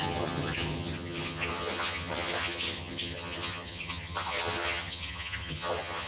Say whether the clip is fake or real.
fake